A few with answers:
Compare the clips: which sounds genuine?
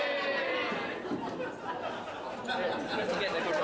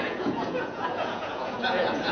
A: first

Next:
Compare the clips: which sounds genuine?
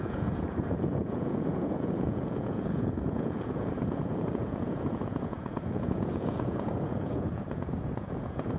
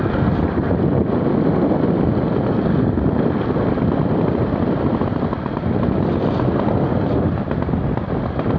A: second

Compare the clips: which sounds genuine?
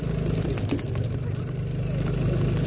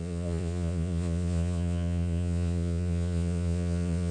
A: first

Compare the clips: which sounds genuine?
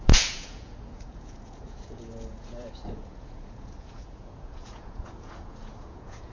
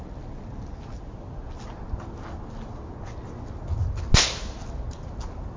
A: second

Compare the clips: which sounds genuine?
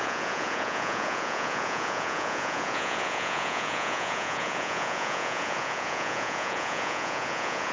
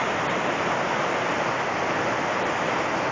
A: second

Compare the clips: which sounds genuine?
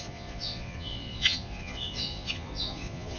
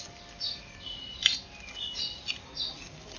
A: second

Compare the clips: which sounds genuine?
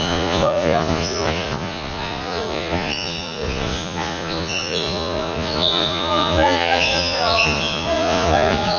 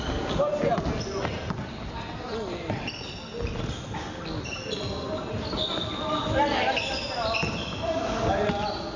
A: second